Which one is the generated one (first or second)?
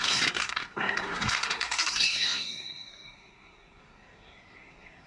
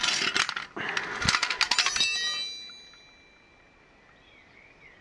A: first